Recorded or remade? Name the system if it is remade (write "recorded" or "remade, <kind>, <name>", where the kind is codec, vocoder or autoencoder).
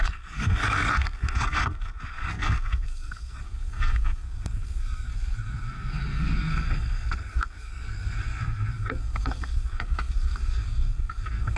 remade, codec, SNAC